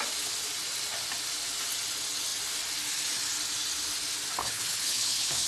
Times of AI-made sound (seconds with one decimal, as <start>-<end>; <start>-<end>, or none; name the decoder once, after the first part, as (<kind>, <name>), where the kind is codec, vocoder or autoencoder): 4.4-5.5 (codec, HILCodec)